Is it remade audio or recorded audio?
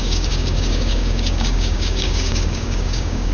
remade